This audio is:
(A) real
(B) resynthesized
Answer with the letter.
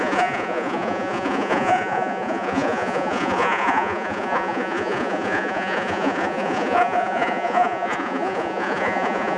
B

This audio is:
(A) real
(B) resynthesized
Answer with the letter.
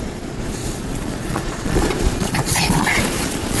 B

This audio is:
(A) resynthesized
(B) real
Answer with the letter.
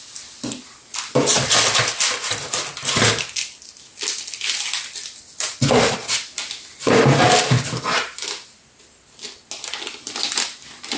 B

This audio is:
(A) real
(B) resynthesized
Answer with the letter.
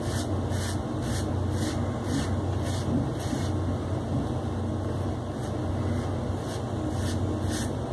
A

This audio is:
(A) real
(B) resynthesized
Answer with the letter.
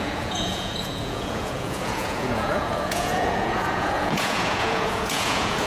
B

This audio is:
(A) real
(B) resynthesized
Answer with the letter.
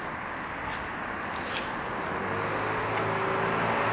A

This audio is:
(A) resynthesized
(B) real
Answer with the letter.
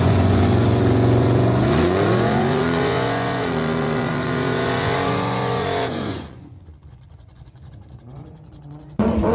A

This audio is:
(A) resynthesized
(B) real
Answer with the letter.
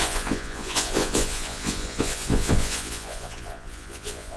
A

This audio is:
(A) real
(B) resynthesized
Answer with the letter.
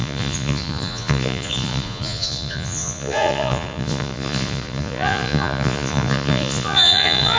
B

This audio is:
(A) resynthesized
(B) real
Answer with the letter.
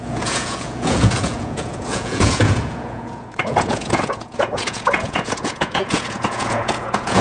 A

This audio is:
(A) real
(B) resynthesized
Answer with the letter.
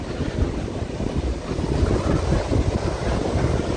A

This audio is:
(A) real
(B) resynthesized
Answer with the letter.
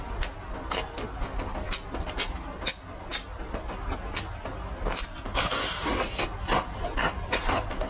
A